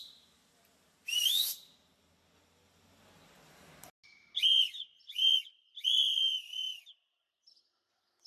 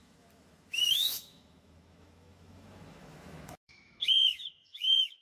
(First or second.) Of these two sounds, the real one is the first